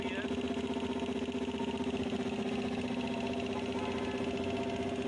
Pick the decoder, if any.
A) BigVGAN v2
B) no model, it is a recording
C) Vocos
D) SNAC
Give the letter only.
B